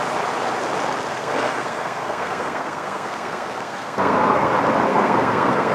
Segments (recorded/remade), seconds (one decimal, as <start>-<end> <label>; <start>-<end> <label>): 0.0-1.1 recorded; 1.1-4.5 remade; 4.5-4.9 recorded; 4.9-5.7 remade